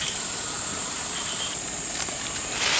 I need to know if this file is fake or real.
real